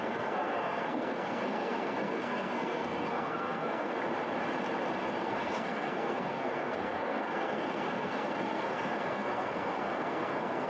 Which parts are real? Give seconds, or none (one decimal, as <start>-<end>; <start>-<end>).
4.0-5.2